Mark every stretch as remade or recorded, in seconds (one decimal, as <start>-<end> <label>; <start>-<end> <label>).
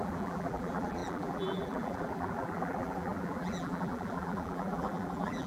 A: 0.0-5.5 remade